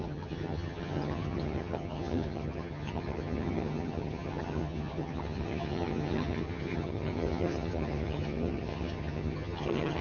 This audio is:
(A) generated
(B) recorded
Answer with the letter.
A